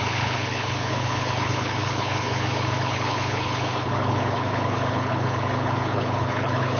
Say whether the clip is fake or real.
fake